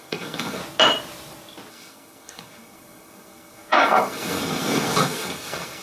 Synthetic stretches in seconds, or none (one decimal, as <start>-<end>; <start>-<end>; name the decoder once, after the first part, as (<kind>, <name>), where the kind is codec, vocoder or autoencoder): 0.0-0.6 (codec, SNAC); 1.7-5.8